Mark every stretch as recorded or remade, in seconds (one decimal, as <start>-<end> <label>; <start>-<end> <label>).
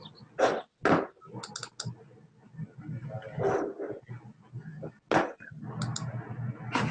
0.0-6.9 recorded